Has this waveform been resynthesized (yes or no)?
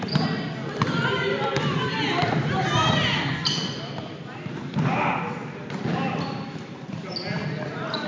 no